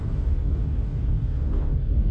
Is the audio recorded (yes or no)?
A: no